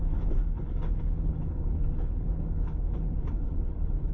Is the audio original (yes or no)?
no